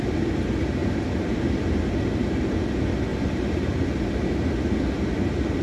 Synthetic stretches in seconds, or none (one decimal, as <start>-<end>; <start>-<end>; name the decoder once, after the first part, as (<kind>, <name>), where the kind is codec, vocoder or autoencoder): 0.8-1.4 (vocoder, BigVGAN v2); 3.1-3.6